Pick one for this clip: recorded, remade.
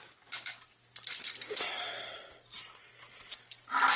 recorded